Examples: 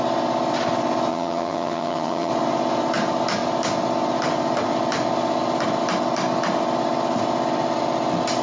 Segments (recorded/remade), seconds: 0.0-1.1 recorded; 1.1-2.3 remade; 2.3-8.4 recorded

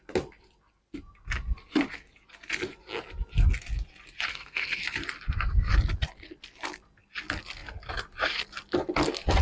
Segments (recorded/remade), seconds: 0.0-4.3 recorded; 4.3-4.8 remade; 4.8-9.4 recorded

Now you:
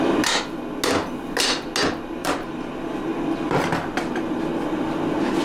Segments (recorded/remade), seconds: 0.0-2.2 recorded; 2.2-2.7 remade; 2.7-5.4 recorded

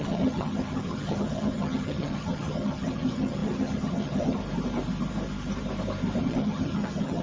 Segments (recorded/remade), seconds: 0.0-4.4 remade; 4.4-6.2 recorded; 6.2-7.2 remade

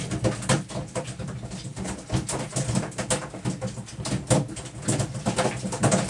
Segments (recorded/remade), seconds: 0.0-6.1 recorded

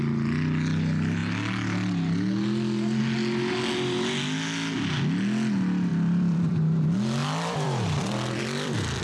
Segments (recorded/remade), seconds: 0.0-5.9 recorded; 5.9-6.5 remade; 6.5-7.2 recorded; 7.2-9.0 remade

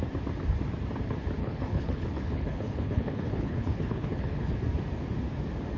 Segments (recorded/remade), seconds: 0.0-1.4 recorded; 1.4-4.6 remade; 4.6-5.8 recorded